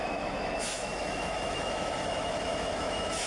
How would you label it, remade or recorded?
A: remade